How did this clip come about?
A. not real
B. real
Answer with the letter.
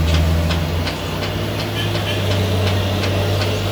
B